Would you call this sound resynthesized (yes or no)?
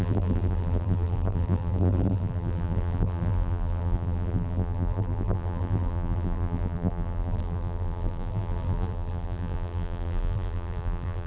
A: yes